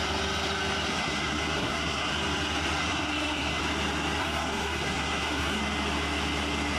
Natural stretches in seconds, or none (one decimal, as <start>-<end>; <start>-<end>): 0.0-0.9; 2.1-2.8; 3.6-4.2; 5.6-6.8